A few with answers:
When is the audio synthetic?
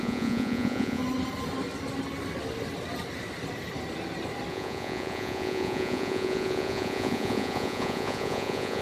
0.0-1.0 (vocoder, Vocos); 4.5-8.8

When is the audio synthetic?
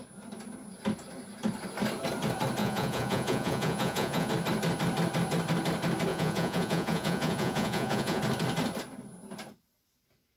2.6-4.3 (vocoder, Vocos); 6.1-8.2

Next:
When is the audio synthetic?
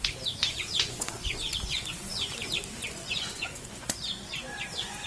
0.4-2.3 (vocoder, Vocos); 2.8-5.1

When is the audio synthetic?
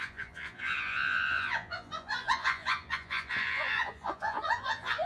0.0-5.1 (vocoder, Vocos)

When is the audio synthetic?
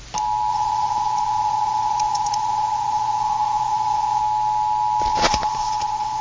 0.5-4.2 (vocoder, Vocos); 5.1-6.2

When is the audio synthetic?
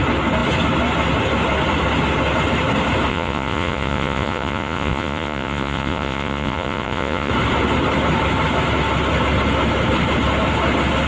3.1-7.3 (vocoder, Vocos)